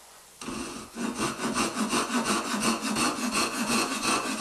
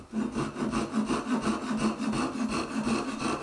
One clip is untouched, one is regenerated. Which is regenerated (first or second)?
first